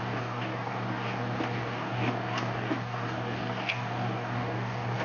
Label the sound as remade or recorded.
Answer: remade